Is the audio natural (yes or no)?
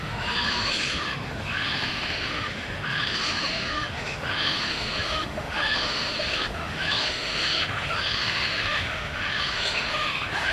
no